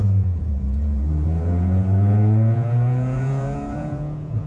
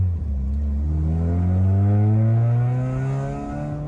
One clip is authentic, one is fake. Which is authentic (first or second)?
second